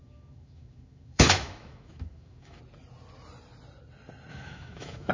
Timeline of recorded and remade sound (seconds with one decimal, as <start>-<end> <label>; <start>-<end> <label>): 0.0-2.6 remade; 2.6-4.3 recorded; 4.3-5.1 remade